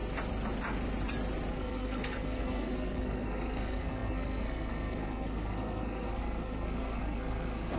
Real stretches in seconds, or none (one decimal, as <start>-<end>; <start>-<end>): 0.0-1.5